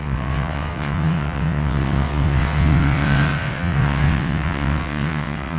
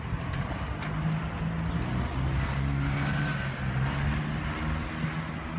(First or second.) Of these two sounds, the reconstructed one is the first